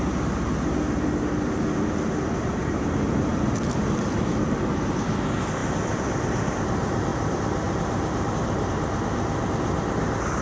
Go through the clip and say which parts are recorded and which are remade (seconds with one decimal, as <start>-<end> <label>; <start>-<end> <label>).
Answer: 0.0-3.3 recorded; 3.3-4.7 remade; 4.7-5.6 recorded; 5.6-6.5 remade; 6.5-7.1 recorded; 7.1-8.7 remade; 8.7-10.4 recorded